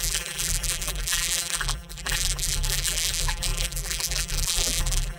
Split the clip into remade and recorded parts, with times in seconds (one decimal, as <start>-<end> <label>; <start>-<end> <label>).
0.0-5.2 remade